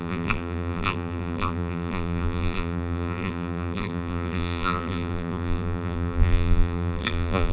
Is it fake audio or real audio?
fake